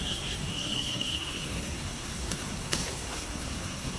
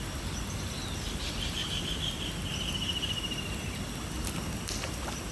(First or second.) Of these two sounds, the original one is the second